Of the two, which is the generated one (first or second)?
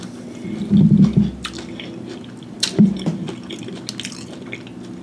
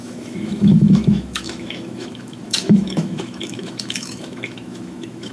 second